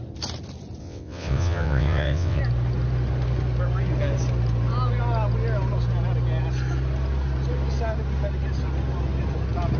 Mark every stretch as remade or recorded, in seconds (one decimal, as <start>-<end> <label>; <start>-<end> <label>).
0.0-0.8 recorded; 0.8-2.4 remade; 2.4-9.8 recorded